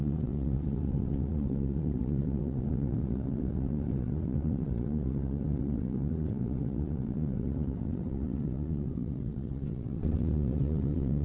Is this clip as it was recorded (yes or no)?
no